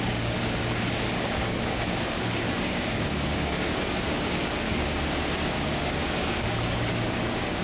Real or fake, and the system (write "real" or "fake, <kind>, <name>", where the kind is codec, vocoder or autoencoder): fake, codec, DAC